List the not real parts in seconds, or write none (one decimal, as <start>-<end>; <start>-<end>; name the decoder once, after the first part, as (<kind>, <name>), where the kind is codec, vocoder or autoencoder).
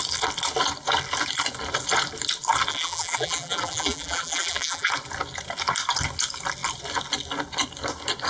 2.7-4.9 (vocoder, BigVGAN v2)